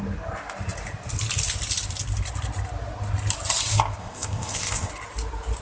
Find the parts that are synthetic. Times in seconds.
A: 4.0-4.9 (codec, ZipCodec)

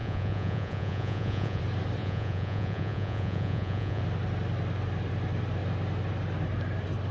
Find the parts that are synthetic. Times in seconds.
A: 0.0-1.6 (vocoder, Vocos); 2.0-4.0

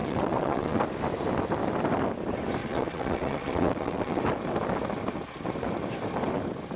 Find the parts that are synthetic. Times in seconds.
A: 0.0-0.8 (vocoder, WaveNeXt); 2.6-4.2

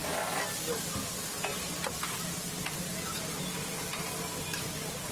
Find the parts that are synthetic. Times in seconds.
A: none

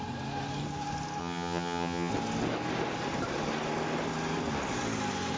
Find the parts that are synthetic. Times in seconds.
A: 1.2-2.1 (vocoder, HiFi-GAN)

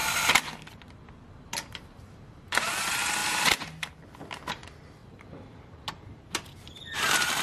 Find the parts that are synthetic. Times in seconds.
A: none

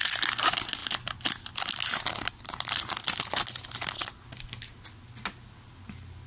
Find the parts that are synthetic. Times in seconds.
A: none